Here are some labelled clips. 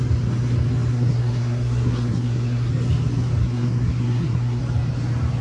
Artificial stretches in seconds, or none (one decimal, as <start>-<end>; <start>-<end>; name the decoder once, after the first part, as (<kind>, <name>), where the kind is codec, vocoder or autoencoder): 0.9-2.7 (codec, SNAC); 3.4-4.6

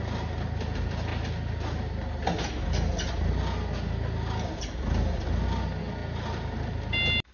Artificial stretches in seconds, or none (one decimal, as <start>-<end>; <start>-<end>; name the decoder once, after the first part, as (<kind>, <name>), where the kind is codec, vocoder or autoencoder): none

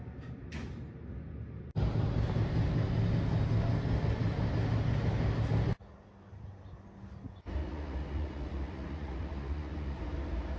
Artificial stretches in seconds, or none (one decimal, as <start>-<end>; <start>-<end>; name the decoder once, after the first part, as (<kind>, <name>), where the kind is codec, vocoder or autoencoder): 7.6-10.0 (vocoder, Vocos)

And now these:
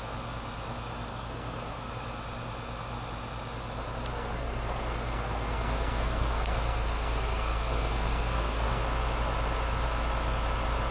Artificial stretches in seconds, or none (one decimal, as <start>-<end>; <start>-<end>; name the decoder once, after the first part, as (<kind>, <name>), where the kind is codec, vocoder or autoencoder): 1.1-1.9 (codec, SNAC); 4.1-8.8